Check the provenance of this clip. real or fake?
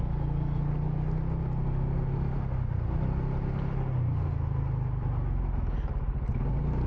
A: real